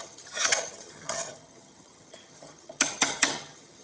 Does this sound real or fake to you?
fake